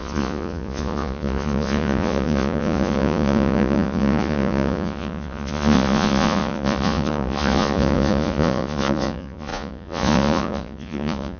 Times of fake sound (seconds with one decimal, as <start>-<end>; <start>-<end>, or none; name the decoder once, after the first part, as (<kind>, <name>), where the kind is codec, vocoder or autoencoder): 0.0-11.4 (vocoder, Vocos)